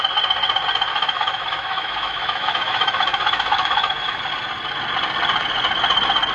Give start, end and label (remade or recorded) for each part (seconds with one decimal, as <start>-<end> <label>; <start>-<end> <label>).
0.0-0.9 recorded; 0.9-4.2 remade; 4.2-6.3 recorded